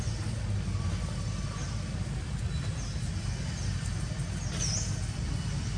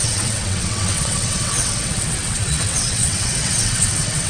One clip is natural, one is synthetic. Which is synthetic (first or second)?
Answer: second